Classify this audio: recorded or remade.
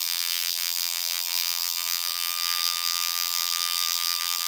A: remade